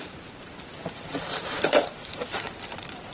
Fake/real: fake